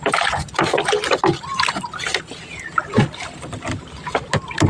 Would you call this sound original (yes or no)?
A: yes